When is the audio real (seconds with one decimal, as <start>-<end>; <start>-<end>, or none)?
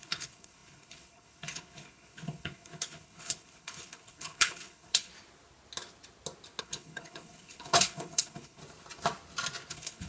5.1-6.6; 8.6-9.7